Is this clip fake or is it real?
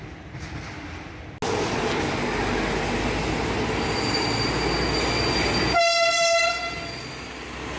real